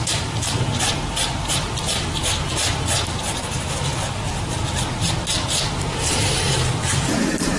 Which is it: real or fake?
fake